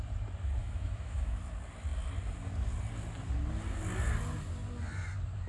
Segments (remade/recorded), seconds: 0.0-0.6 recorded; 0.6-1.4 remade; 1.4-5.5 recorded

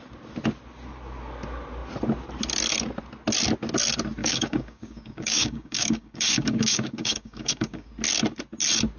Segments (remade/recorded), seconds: 0.0-4.2 recorded; 4.2-7.9 remade; 7.9-9.0 recorded

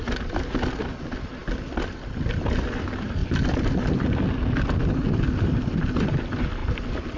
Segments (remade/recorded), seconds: 0.0-3.2 recorded; 3.2-4.8 remade; 4.8-6.6 recorded; 6.6-7.2 remade